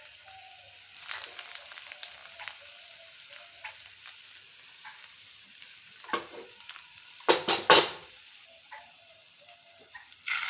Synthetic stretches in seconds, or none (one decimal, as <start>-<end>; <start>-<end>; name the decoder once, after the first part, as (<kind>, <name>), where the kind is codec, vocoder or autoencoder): 0.0-2.2 (vocoder, BigVGAN v2); 3.7-10.5